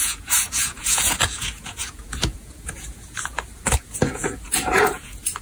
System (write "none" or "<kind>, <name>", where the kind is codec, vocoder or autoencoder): vocoder, Vocos